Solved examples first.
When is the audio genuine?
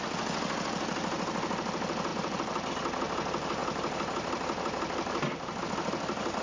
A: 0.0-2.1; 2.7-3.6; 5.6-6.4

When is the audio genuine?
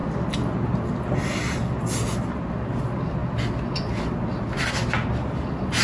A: 0.0-5.8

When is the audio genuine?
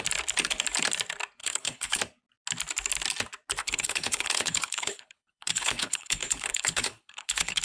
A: 0.0-1.4; 2.0-3.6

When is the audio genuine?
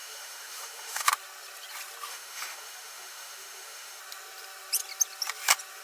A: 1.1-2.1; 4.0-5.8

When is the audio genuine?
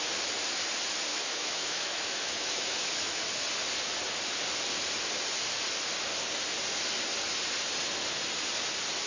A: 0.0-1.1; 3.2-9.1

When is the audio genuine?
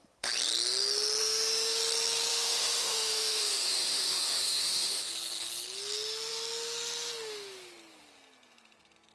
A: 0.0-1.2; 1.8-2.3; 5.1-9.1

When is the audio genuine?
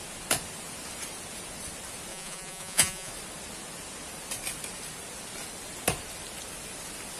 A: 0.0-2.1; 3.1-7.2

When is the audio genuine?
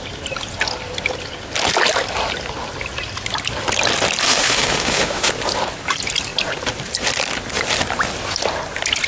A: 0.0-4.2; 5.3-9.1